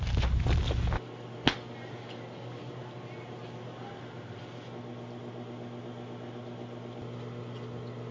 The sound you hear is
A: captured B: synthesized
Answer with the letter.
A